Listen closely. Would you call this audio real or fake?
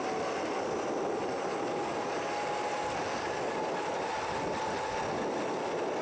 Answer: real